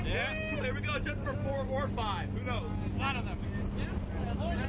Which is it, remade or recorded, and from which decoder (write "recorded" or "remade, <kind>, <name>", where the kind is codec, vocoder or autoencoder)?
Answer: recorded